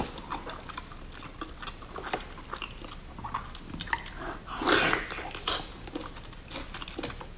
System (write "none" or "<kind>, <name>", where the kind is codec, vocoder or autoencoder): none